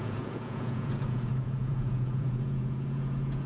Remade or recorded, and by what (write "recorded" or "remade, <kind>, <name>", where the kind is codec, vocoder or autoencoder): remade, vocoder, Vocos